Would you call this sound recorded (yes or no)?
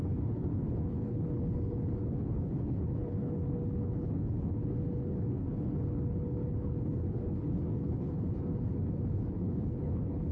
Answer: no